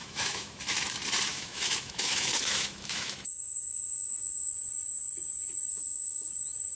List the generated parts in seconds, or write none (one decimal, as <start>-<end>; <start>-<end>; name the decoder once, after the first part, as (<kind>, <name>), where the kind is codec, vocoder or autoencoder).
0.0-0.6 (autoencoder, DAC-VAE); 1.3-4.5; 5.7-6.3